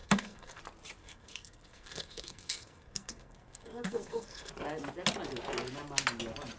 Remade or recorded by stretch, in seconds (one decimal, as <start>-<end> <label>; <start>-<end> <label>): 0.0-0.6 remade; 0.6-1.0 recorded; 1.0-4.5 remade; 4.5-6.6 recorded